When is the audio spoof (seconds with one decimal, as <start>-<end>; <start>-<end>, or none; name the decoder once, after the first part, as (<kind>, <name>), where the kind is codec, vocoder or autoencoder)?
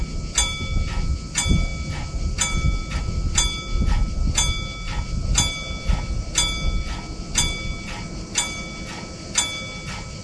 none